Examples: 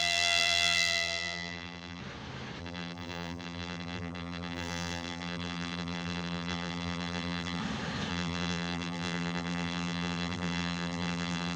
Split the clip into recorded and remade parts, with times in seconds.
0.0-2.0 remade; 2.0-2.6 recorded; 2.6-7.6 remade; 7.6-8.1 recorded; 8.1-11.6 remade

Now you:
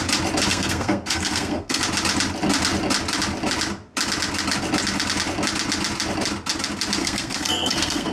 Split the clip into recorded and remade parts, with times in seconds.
0.0-0.5 recorded; 0.5-1.8 remade; 1.8-7.0 recorded; 7.0-8.1 remade

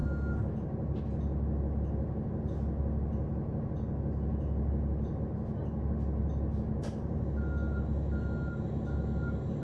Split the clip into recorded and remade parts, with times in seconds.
0.0-9.6 recorded

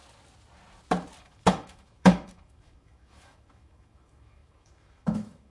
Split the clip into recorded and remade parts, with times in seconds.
0.0-1.2 recorded; 1.2-5.5 remade